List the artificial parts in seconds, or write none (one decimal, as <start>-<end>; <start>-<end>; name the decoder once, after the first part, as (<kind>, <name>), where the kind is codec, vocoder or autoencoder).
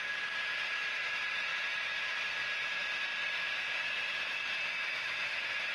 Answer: none